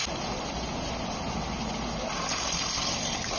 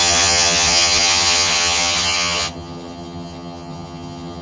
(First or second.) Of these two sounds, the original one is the first